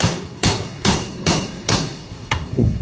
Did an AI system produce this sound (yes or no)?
yes